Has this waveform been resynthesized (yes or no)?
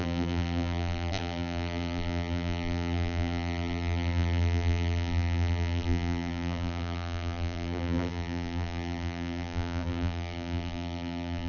yes